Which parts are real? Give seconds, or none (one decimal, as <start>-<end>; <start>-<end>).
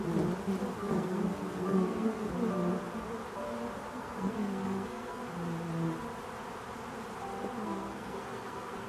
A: 0.0-0.8; 2.3-3.9; 5.2-7.6